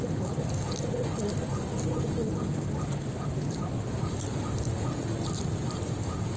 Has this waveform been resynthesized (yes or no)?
no